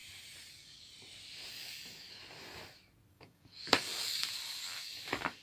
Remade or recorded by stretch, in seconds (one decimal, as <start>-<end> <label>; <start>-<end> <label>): 0.0-0.5 recorded; 0.5-0.9 remade; 0.9-1.5 recorded; 1.5-2.2 remade; 2.2-3.1 recorded; 3.1-5.4 remade

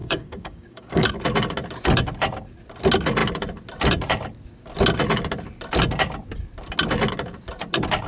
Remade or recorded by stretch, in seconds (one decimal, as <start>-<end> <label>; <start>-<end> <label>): 0.0-1.1 remade; 1.1-8.1 recorded

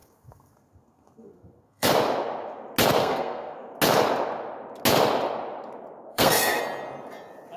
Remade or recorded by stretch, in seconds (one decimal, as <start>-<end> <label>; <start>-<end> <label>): 0.0-1.9 remade; 1.9-3.0 recorded; 3.0-3.7 remade; 3.7-6.1 recorded; 6.1-6.6 remade; 6.6-7.6 recorded

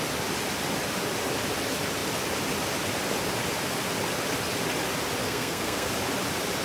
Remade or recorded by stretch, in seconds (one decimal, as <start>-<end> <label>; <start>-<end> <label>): 0.0-5.2 recorded; 5.2-5.9 remade; 5.9-6.6 recorded

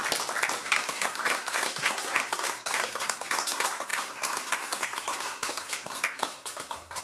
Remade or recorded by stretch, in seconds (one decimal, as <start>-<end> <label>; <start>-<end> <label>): 0.0-0.6 recorded; 0.6-7.0 remade

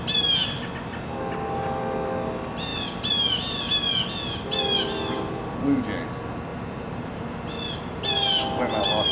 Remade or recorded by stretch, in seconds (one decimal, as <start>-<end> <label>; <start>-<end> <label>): 0.0-6.5 recorded; 6.5-7.2 remade; 7.2-9.1 recorded

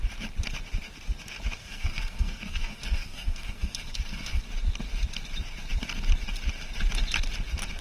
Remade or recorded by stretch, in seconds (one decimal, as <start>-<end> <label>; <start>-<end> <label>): 0.0-1.6 recorded; 1.6-4.4 remade; 4.4-7.8 recorded

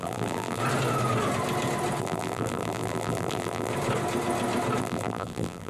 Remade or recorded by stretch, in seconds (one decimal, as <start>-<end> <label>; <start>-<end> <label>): 0.0-0.6 remade; 0.6-2.0 recorded; 2.0-3.7 remade; 3.7-4.8 recorded; 4.8-5.7 remade